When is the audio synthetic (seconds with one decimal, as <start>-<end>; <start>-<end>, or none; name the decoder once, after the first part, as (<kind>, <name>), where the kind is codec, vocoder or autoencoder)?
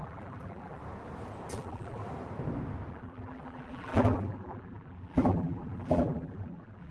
0.0-0.8 (vocoder, BigVGAN v2); 1.5-2.0; 2.9-6.9